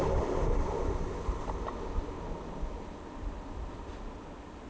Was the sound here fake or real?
real